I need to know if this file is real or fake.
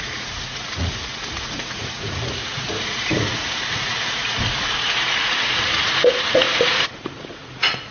fake